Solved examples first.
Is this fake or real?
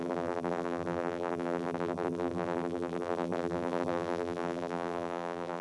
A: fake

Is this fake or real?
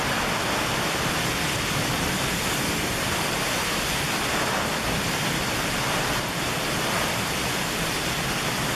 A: real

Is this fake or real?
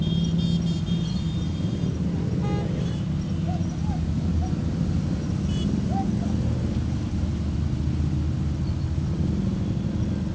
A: real